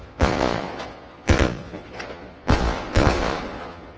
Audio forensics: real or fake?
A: fake